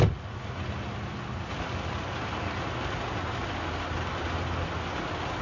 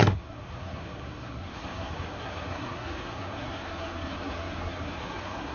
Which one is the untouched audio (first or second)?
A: first